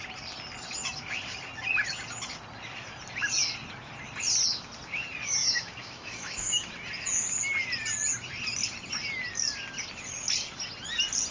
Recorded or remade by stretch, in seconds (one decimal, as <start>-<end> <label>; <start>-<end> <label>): 0.0-5.4 recorded; 5.4-6.7 remade; 6.7-11.3 recorded